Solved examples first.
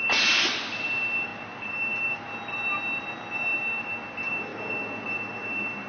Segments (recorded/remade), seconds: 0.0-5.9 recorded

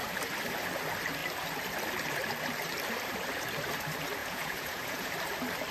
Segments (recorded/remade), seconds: 0.0-4.2 recorded; 4.2-5.1 remade; 5.1-5.7 recorded

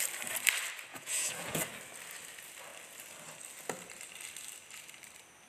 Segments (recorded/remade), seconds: 0.0-0.9 recorded; 0.9-1.6 remade; 1.6-5.5 recorded

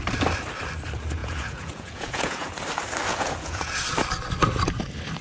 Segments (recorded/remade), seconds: 0.0-1.2 recorded; 1.2-2.5 remade; 2.5-3.1 recorded; 3.1-3.8 remade; 3.8-5.2 recorded

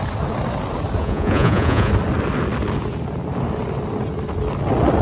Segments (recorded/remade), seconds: 0.0-1.0 recorded; 1.0-1.9 remade; 1.9-5.0 recorded